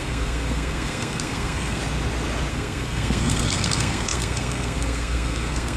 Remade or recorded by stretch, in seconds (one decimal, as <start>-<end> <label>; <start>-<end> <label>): 0.0-1.8 remade; 1.8-2.5 recorded; 2.5-5.8 remade